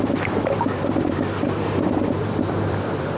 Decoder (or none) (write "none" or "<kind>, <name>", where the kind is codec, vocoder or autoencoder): vocoder, BigVGAN v2